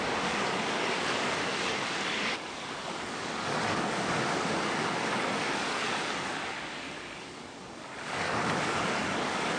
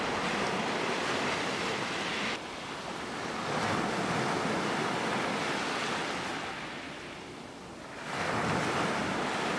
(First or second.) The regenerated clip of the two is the first